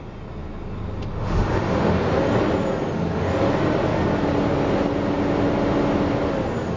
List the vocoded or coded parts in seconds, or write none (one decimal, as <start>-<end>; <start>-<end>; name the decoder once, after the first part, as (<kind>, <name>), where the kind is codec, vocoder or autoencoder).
1.1-2.0 (autoencoder, DAC-VAE)